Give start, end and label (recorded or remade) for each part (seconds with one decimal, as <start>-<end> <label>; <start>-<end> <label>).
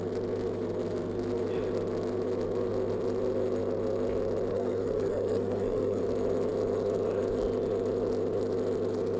0.0-4.5 recorded; 4.5-6.0 remade; 6.0-9.2 recorded